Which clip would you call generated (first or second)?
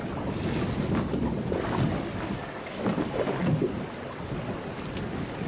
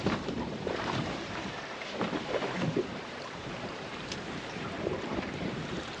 second